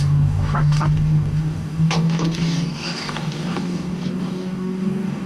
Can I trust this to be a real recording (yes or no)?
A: no